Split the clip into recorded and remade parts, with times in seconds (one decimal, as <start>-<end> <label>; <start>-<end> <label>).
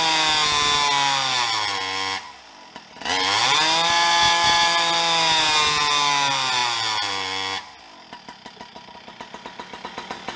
0.0-10.4 recorded